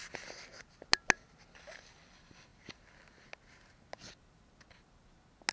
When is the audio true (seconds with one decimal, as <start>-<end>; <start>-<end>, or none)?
0.0-5.5

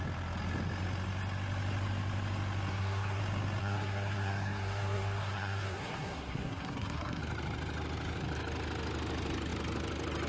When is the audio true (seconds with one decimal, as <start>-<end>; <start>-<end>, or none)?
0.0-2.7; 3.2-3.6; 7.2-10.3

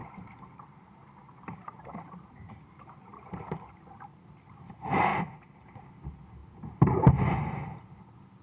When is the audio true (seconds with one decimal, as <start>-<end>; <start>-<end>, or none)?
3.9-6.4; 7.8-8.4

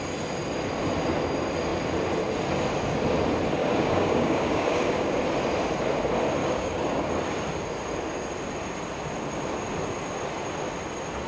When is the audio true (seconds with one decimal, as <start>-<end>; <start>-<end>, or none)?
0.0-3.6; 5.2-6.4; 7.1-11.3